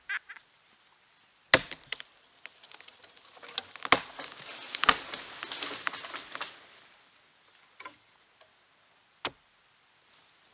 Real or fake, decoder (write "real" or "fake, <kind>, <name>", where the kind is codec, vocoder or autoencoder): real